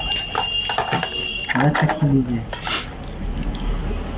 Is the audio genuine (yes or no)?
yes